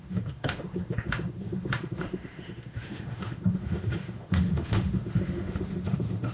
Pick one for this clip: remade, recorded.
remade